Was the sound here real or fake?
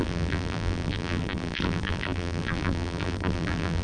fake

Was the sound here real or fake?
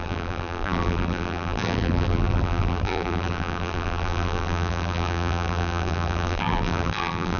fake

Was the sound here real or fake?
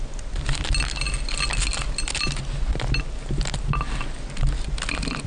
real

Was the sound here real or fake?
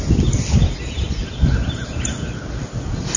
real